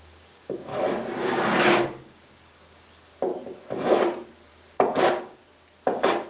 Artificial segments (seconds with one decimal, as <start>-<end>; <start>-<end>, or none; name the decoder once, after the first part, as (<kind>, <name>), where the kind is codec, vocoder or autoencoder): 0.0-0.7 (codec, DAC); 1.2-3.3; 4.5-5.4